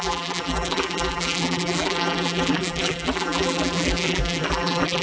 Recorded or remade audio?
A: remade